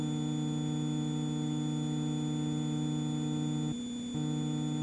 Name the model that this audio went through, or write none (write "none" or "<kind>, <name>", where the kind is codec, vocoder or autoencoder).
none